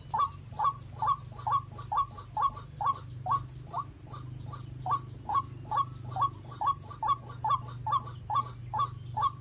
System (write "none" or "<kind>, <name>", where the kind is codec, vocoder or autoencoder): none